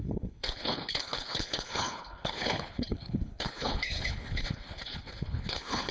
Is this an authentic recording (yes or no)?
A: no